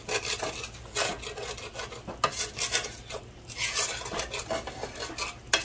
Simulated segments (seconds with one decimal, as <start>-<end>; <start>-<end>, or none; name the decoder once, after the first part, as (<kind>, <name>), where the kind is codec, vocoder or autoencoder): none